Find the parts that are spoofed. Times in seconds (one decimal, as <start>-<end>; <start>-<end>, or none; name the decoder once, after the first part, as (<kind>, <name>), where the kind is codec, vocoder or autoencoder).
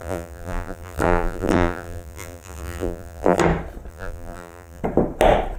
0.0-3.4 (vocoder, BigVGAN v2); 3.9-4.8